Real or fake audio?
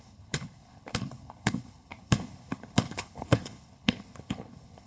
fake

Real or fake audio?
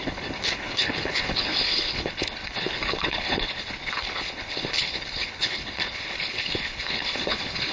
fake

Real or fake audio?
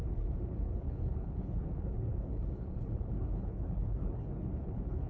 fake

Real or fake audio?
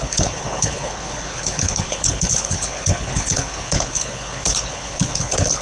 fake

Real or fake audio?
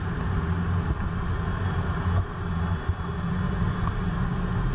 real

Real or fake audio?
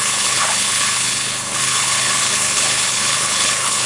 fake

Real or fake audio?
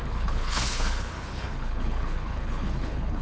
fake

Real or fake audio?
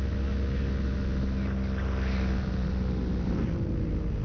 real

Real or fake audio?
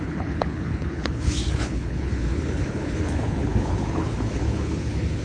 fake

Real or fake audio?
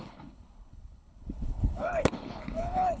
fake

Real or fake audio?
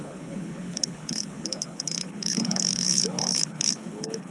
fake